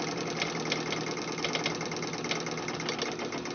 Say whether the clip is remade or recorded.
recorded